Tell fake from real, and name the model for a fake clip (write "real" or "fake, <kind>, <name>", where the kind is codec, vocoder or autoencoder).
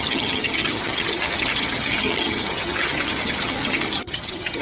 fake, vocoder, HiFi-GAN